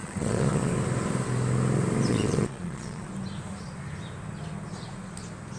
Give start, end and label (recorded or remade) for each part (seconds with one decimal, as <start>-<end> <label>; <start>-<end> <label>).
0.0-0.7 remade; 0.7-2.1 recorded; 2.1-3.1 remade; 3.1-5.6 recorded